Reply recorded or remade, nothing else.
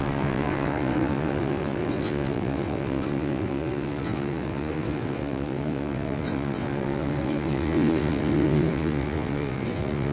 remade